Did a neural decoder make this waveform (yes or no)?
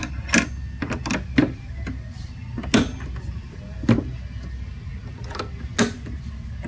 no